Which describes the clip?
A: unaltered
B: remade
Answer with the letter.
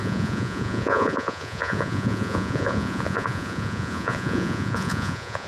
B